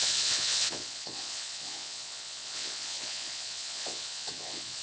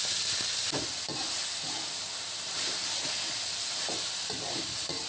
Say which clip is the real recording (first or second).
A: second